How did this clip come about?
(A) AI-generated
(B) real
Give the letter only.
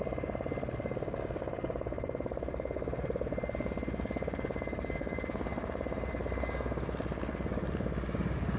B